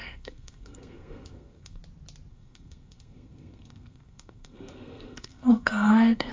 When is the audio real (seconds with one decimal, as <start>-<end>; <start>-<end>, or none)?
1.8-2.3